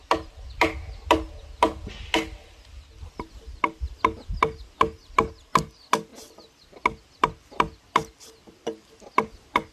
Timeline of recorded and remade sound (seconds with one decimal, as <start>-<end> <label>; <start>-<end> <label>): 0.0-9.7 recorded